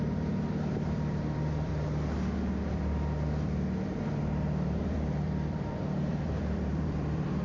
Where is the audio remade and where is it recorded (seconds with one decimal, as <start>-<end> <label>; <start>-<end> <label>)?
0.0-1.7 remade; 1.7-2.7 recorded; 2.7-7.4 remade